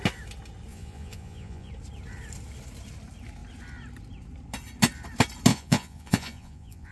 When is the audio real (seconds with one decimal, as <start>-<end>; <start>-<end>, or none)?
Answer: 0.0-0.7; 1.7-5.5